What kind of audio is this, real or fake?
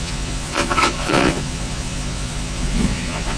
fake